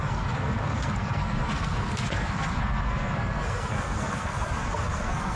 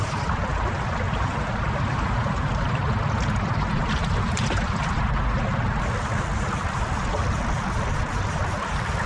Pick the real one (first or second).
second